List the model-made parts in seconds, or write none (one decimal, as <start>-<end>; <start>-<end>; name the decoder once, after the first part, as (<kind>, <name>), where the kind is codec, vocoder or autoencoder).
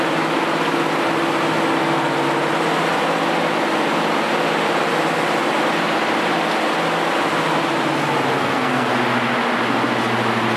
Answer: 8.4-8.9 (codec, SNAC)